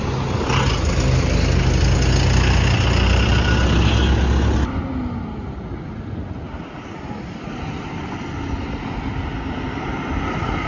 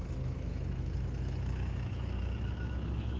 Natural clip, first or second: first